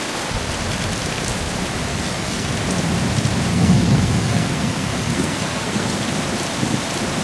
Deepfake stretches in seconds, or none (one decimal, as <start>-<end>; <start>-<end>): 1.9-2.5; 3.5-6.0